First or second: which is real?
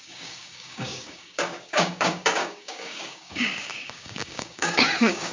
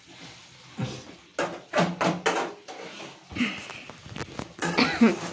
second